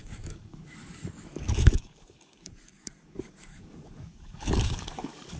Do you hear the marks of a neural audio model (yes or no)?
yes